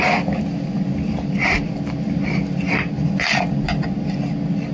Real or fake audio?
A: real